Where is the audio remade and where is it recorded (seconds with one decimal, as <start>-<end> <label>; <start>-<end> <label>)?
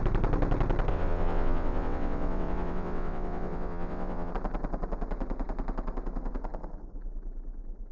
0.0-0.9 recorded; 0.9-4.3 remade; 4.3-7.9 recorded